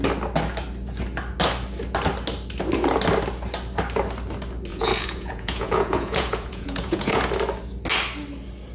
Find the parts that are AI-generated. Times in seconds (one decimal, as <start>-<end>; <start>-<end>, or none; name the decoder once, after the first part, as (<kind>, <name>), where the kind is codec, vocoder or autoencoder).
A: 4.7-7.3 (vocoder, Vocos)